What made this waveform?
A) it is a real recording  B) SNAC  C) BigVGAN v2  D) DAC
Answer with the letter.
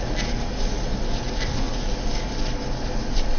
A